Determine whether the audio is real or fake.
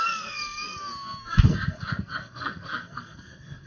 fake